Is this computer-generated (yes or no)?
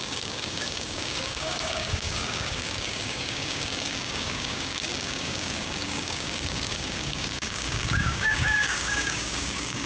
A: yes